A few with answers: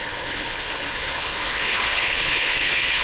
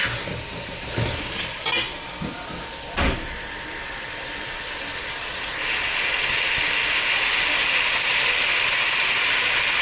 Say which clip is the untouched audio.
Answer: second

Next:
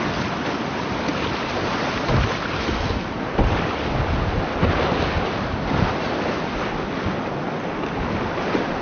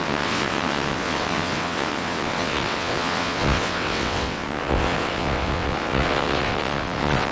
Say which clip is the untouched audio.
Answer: first